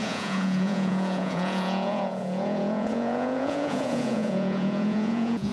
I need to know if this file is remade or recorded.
remade